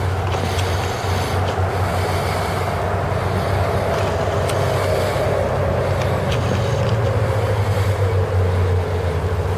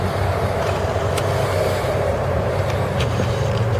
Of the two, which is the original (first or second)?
first